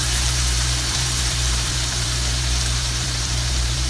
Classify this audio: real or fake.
fake